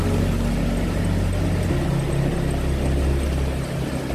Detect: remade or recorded recorded